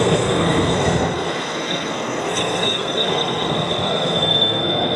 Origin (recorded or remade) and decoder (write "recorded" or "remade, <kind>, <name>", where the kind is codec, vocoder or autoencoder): remade, codec, SNAC